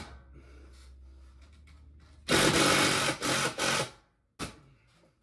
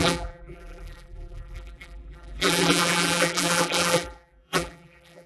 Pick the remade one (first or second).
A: second